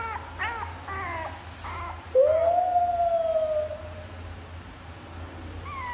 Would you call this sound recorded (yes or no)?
yes